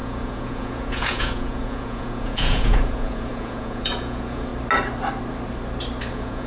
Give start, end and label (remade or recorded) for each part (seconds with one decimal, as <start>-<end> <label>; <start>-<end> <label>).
0.0-4.5 remade; 4.5-6.1 recorded; 6.1-6.5 remade